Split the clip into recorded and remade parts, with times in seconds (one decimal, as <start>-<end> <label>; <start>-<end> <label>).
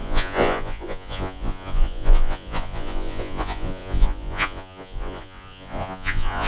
0.0-6.5 remade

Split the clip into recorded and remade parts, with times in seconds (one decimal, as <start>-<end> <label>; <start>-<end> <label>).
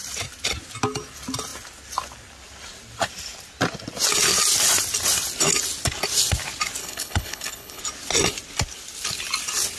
0.0-6.8 recorded; 6.8-7.8 remade; 7.8-9.8 recorded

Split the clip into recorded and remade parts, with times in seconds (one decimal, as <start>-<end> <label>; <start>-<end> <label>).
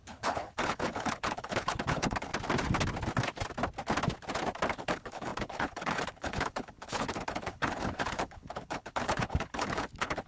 0.0-2.3 remade; 2.3-4.7 recorded; 4.7-10.3 remade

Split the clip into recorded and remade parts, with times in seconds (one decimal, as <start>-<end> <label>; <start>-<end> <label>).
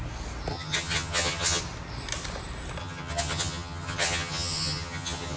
0.0-0.5 recorded; 0.5-1.6 remade; 1.6-2.8 recorded; 2.8-5.4 remade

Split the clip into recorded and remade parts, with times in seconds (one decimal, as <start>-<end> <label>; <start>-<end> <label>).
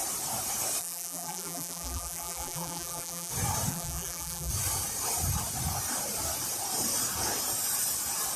0.0-0.8 recorded; 0.8-3.3 remade; 3.3-3.7 recorded; 3.7-4.5 remade; 4.5-8.4 recorded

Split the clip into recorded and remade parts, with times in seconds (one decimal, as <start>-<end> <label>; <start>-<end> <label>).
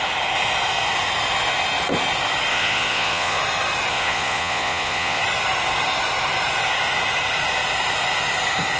0.0-2.5 recorded; 2.5-3.4 remade; 3.4-3.9 recorded; 3.9-5.2 remade; 5.2-8.8 recorded